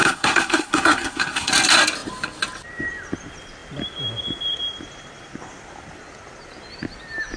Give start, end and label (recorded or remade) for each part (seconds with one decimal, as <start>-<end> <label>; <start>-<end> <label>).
0.0-1.5 remade; 1.5-7.4 recorded